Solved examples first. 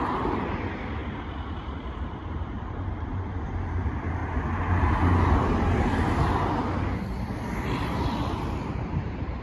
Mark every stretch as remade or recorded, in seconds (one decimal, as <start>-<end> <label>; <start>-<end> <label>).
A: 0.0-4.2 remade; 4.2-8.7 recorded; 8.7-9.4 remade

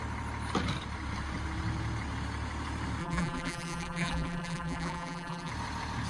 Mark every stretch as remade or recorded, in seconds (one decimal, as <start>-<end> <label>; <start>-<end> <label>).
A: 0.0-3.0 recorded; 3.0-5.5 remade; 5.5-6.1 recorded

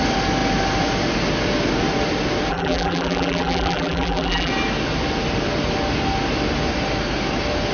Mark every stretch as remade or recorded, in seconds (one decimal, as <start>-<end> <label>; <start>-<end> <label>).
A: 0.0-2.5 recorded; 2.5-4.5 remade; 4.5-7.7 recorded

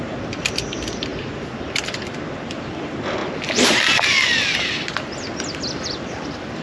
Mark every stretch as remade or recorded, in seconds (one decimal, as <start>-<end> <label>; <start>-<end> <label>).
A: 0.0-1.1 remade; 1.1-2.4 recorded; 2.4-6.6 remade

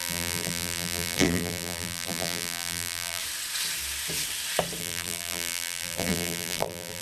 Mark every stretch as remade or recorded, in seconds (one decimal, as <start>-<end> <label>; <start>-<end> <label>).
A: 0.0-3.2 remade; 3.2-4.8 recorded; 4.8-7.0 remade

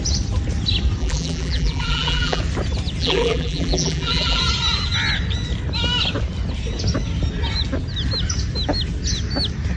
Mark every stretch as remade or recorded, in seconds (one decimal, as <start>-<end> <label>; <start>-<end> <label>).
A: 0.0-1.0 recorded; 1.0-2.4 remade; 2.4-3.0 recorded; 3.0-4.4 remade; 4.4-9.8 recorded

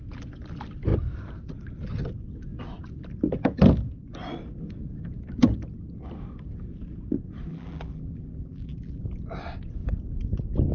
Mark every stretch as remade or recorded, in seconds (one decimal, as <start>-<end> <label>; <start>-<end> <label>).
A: 0.0-7.5 recorded; 7.5-9.0 remade; 9.0-10.7 recorded

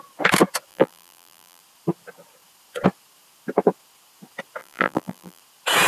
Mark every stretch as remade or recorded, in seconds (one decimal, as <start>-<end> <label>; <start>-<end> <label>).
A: 0.0-0.7 recorded; 0.7-1.6 remade; 1.6-4.6 recorded; 4.6-5.4 remade; 5.4-5.9 recorded